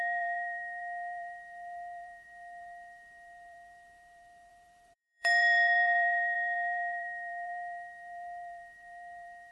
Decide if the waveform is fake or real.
fake